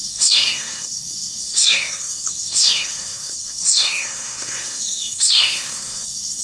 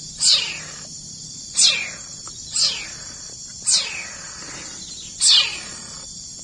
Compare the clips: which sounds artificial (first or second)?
first